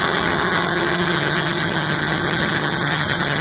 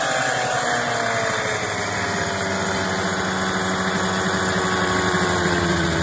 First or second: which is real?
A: second